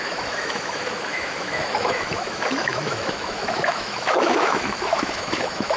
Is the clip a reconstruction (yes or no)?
yes